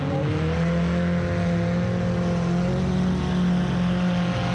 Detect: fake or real real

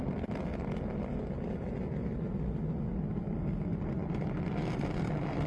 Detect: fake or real real